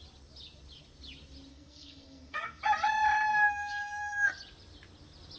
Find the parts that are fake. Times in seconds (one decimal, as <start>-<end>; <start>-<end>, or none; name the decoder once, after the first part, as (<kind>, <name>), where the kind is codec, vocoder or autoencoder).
1.5-2.6 (codec, SNAC); 3.3-4.3